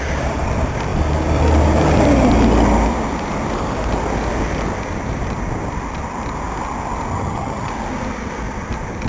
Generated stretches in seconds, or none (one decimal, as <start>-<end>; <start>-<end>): 7.1-7.7